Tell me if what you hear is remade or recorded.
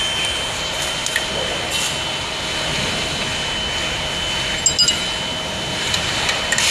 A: recorded